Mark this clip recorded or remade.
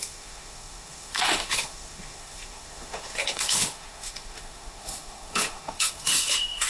remade